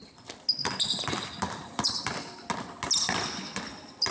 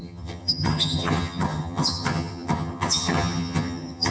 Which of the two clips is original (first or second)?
first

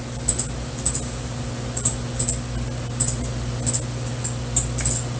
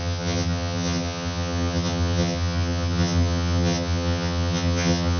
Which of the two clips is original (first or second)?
first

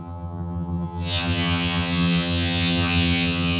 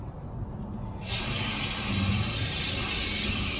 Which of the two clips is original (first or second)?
second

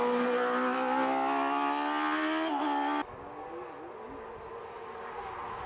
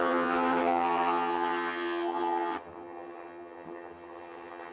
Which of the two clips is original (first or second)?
first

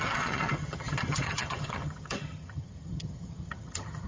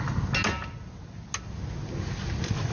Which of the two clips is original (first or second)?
second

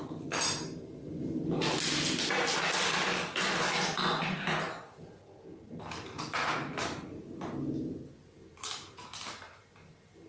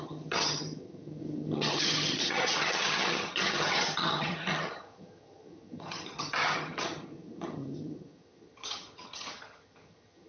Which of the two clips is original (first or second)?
first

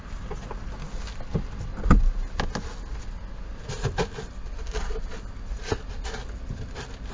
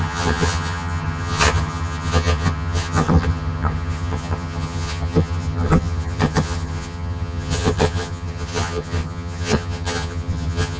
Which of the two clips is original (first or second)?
first